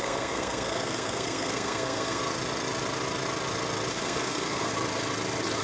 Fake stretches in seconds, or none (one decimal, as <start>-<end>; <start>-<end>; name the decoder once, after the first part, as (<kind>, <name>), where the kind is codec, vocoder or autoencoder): 0.0-2.2 (codec, SNAC); 3.9-4.7